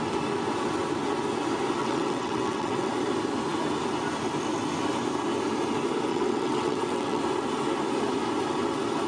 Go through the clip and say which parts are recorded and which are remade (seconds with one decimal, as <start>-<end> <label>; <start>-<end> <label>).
0.0-1.8 recorded; 1.8-2.9 remade; 2.9-6.1 recorded; 6.1-7.2 remade; 7.2-9.1 recorded